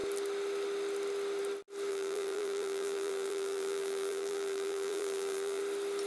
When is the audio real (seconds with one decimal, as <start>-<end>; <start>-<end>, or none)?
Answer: 0.0-1.9; 5.6-6.1